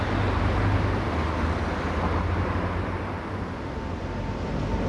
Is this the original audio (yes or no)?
yes